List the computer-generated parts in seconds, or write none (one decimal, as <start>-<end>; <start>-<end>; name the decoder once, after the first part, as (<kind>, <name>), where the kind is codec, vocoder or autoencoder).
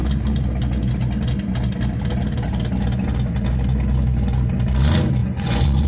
5.2-5.9 (vocoder, Vocos)